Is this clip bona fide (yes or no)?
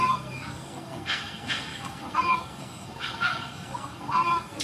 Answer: no